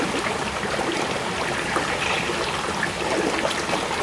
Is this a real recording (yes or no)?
yes